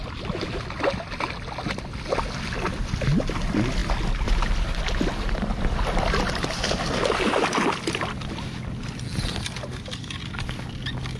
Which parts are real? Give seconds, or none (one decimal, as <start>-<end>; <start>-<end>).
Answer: 0.0-11.2